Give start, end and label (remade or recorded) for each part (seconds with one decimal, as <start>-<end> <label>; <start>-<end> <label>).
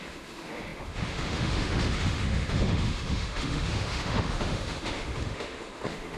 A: 0.0-6.2 remade